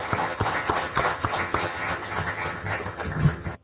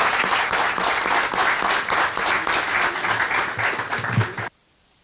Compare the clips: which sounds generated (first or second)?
first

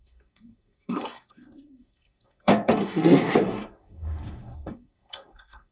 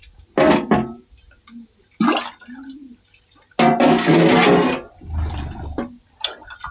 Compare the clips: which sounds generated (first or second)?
first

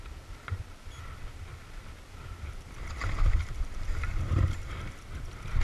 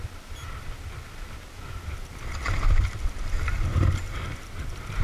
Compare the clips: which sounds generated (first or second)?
first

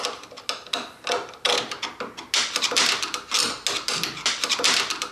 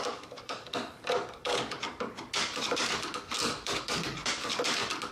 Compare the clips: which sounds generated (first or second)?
second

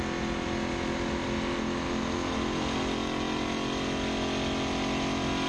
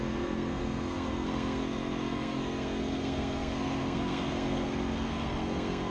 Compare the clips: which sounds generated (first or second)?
second